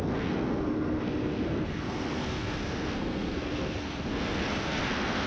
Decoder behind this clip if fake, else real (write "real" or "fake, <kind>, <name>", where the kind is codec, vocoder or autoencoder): fake, codec, SNAC